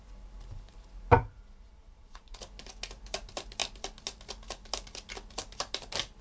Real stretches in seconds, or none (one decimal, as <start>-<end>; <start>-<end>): 0.0-1.2; 2.4-6.2